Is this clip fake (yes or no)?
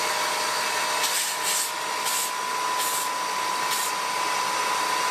no